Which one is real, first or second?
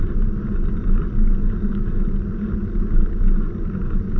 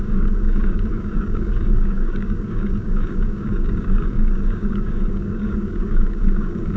first